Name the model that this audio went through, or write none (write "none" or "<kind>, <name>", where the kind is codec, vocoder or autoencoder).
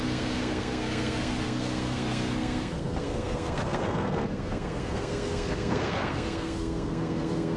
codec, SNAC